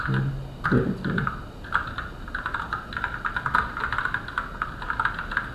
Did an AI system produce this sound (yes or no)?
no